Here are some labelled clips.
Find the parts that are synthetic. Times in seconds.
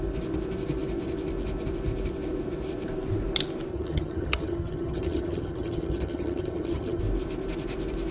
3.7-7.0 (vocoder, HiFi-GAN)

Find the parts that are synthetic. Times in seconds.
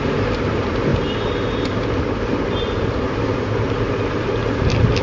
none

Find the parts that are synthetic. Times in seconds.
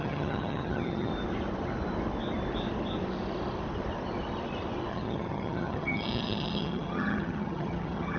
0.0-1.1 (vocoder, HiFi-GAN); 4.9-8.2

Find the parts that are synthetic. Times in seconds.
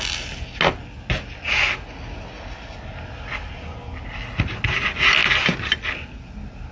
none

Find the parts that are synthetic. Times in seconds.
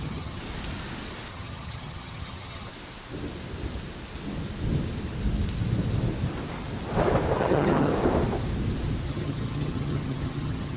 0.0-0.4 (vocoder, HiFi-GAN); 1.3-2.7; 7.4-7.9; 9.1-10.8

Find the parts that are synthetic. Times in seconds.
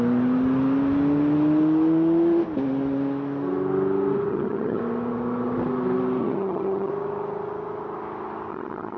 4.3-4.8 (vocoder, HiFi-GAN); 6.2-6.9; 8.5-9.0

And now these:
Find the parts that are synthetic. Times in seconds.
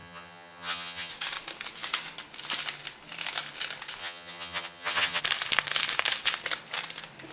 0.0-1.1 (vocoder, HiFi-GAN); 4.0-5.2